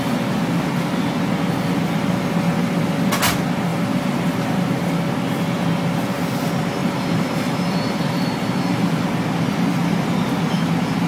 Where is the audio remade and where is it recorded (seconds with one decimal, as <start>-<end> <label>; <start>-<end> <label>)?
0.0-3.7 recorded; 3.7-4.9 remade; 4.9-6.8 recorded; 6.8-9.0 remade; 9.0-11.1 recorded